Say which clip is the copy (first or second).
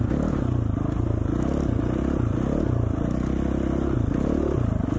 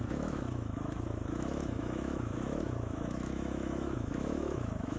second